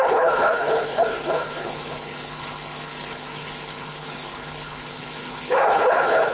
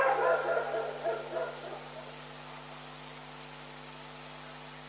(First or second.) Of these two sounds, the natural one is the second